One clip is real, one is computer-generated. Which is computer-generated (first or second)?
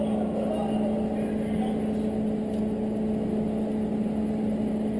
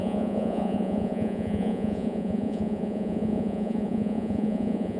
second